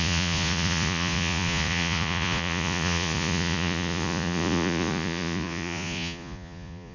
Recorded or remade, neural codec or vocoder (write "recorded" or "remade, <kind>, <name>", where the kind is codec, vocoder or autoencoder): remade, vocoder, Vocos